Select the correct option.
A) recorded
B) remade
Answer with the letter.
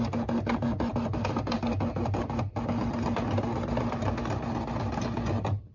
A